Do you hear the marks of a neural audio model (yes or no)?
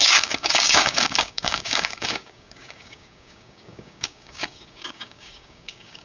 yes